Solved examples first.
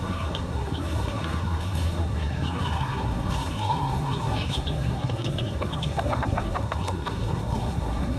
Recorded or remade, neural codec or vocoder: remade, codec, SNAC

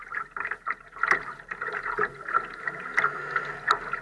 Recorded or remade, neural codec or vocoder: recorded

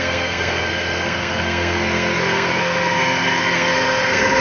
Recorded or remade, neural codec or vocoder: remade, codec, SNAC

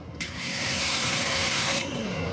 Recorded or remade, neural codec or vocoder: remade, codec, SNAC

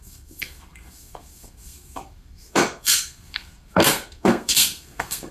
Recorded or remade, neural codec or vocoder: remade, codec, SNAC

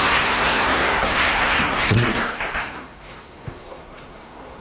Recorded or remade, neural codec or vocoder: remade, codec, SNAC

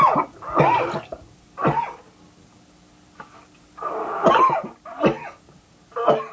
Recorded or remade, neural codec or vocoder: recorded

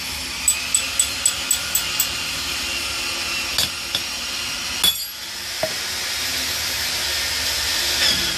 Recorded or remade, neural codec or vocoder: recorded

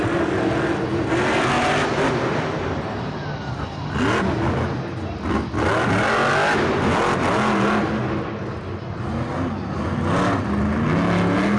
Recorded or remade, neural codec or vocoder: recorded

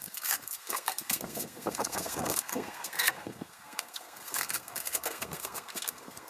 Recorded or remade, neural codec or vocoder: remade, codec, SNAC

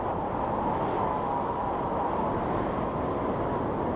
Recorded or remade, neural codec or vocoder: recorded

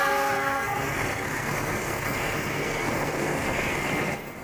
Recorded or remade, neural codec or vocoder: remade, codec, SNAC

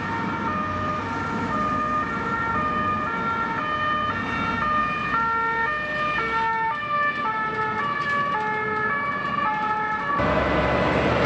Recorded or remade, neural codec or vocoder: recorded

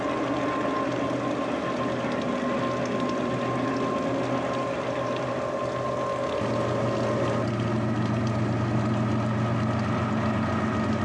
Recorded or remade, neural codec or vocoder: recorded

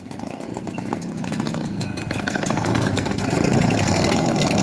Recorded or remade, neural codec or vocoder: remade, codec, SNAC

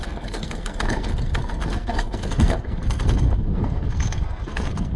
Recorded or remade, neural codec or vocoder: remade, codec, SNAC